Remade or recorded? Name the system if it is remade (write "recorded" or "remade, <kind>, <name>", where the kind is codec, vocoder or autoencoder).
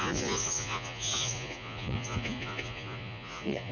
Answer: remade, vocoder, Vocos